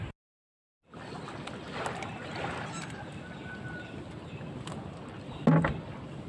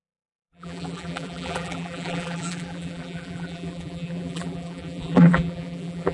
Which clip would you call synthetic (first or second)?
second